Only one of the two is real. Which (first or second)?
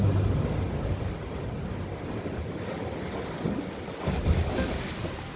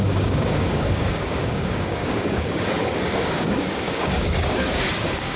first